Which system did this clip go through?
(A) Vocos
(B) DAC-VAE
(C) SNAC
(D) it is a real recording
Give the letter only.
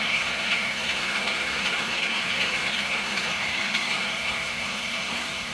C